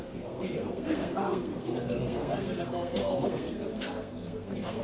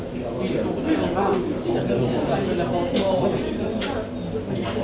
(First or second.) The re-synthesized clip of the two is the first